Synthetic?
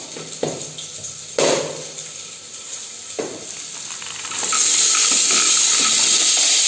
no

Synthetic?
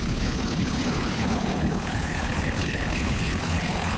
yes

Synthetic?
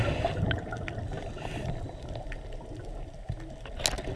no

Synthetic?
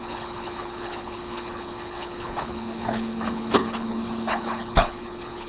yes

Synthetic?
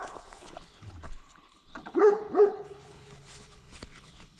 yes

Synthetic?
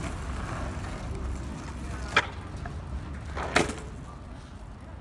no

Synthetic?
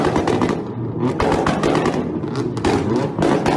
no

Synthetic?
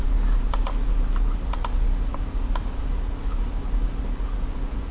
no